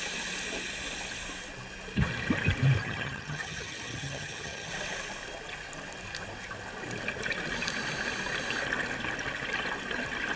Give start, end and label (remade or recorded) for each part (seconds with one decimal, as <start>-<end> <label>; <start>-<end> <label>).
0.0-2.8 recorded; 2.8-4.7 remade; 4.7-10.4 recorded